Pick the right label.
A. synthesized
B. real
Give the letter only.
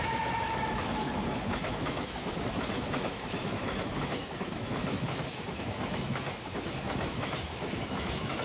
A